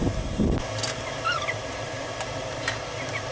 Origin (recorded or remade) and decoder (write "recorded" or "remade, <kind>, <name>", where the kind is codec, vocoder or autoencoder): remade, vocoder, BigVGAN v2